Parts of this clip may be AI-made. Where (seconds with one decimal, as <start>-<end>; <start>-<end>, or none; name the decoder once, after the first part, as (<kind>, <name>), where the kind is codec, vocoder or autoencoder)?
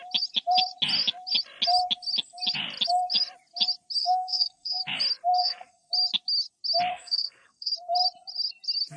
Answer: 4.0-4.8 (codec, SNAC); 5.4-5.9; 6.9-7.7